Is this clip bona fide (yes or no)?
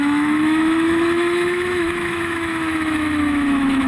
no